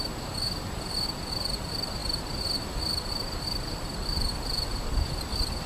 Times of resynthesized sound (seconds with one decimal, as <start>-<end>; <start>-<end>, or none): none